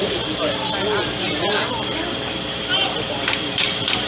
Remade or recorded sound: recorded